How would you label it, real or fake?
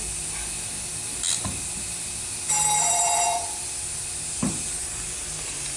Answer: real